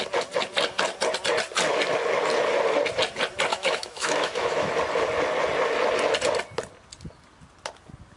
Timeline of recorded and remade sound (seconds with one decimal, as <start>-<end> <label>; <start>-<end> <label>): 0.0-3.5 recorded; 3.5-4.7 remade; 4.7-8.2 recorded